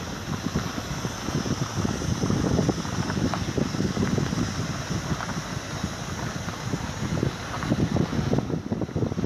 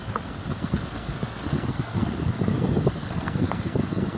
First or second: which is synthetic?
second